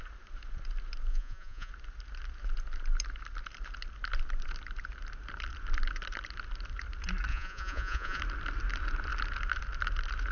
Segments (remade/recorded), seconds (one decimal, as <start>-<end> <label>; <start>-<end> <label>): 0.0-1.1 recorded; 1.1-1.7 remade; 1.7-7.3 recorded; 7.3-8.2 remade; 8.2-10.3 recorded